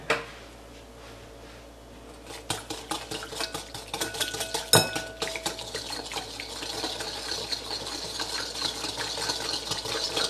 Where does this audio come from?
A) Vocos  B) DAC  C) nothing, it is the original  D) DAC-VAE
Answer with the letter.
C